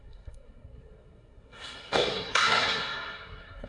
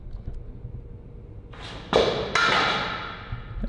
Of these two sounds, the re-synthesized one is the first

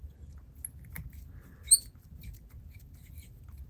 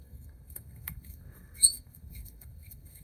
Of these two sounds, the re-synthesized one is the second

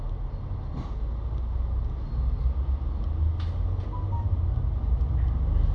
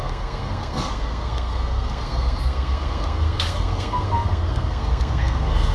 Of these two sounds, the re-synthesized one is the second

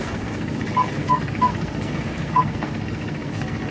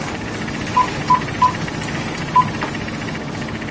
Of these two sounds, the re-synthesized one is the first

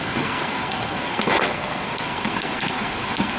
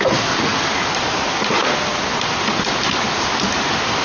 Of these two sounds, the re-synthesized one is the first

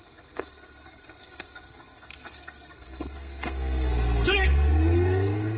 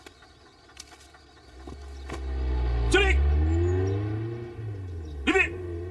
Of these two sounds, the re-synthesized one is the first